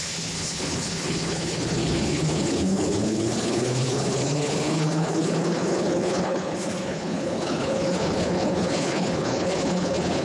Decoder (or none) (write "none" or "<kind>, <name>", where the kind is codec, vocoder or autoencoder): codec, HILCodec